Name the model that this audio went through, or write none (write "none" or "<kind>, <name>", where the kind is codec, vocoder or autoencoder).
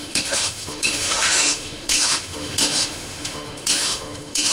autoencoder, DAC-VAE